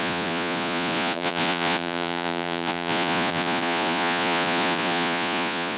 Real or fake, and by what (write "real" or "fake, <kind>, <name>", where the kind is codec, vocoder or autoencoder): fake, vocoder, Vocos